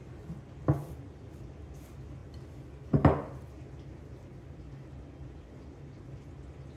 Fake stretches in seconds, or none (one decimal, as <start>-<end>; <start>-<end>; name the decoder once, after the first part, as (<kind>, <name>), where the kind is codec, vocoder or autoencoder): 0.8-1.4 (vocoder, BigVGAN v2)